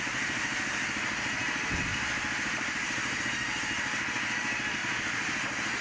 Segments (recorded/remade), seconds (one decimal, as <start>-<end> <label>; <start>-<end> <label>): 0.0-1.9 recorded; 1.9-3.2 remade; 3.2-5.8 recorded